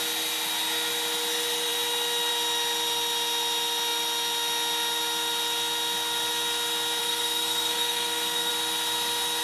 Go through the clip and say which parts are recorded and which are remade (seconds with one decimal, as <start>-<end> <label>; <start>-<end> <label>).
0.0-7.0 recorded; 7.0-8.5 remade; 8.5-9.4 recorded